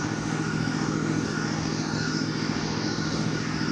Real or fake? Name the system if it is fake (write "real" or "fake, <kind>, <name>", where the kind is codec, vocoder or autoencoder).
fake, codec, DAC